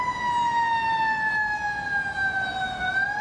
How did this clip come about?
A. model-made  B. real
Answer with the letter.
B